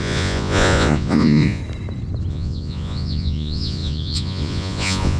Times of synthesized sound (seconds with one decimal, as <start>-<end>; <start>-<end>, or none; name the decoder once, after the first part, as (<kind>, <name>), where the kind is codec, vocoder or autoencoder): 0.0-1.6 (vocoder, Vocos); 2.3-5.2